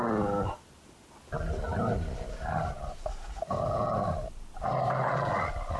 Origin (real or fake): real